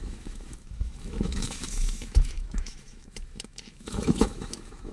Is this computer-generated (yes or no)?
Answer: yes